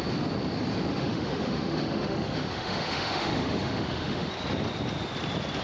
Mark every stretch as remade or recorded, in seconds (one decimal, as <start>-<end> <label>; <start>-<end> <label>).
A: 0.0-0.9 recorded; 0.9-4.3 remade; 4.3-5.6 recorded